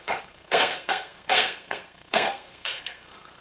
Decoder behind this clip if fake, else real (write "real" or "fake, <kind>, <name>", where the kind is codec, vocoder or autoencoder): fake, codec, SNAC